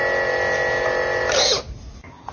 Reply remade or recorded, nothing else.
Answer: recorded